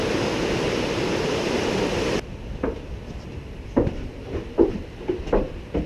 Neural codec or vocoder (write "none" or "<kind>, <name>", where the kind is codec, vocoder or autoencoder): vocoder, BigVGAN v2